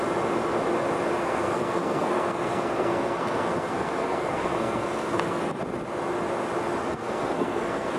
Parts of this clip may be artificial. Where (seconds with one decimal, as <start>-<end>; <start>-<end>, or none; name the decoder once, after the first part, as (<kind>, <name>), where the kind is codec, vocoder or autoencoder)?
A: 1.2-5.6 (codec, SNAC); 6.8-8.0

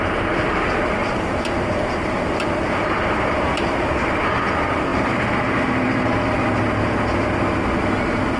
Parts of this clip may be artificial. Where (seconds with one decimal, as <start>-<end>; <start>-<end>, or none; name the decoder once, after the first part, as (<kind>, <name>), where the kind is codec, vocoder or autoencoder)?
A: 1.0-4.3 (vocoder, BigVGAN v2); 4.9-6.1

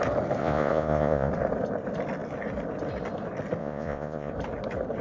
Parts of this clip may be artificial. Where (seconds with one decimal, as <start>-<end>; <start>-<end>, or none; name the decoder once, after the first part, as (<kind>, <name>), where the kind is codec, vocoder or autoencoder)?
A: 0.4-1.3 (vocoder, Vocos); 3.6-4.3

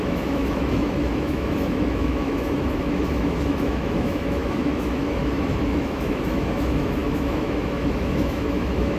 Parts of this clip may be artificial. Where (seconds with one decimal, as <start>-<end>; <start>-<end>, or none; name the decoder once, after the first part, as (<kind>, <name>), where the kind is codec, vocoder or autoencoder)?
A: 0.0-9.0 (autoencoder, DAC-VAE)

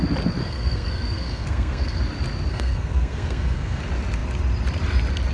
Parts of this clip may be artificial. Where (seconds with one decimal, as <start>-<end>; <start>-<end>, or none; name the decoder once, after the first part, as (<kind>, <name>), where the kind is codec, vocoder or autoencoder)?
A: 0.4-2.0 (codec, SNAC); 2.5-3.8

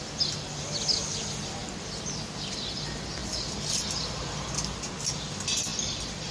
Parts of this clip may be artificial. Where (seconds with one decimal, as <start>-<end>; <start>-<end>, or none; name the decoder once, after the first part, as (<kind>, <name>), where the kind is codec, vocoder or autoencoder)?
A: 3.2-3.9 (vocoder, BigVGAN v2); 5.7-6.3